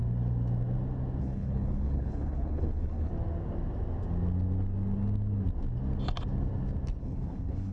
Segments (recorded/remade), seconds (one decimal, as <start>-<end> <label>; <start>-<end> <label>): 0.0-1.2 recorded; 1.2-3.1 remade; 3.1-7.0 recorded; 7.0-7.7 remade